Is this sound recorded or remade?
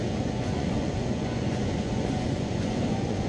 remade